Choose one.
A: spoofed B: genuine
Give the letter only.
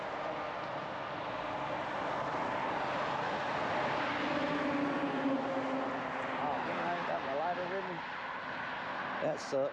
B